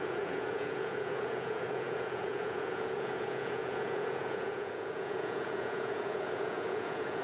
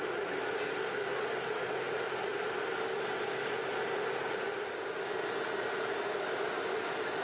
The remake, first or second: first